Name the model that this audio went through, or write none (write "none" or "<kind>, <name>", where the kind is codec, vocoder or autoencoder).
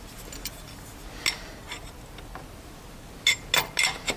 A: none